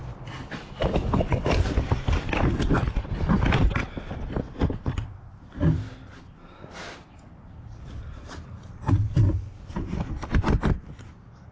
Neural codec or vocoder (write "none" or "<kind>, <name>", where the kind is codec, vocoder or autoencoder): vocoder, BigVGAN v2